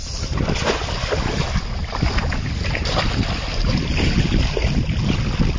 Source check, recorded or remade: recorded